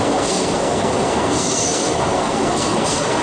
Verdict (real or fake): fake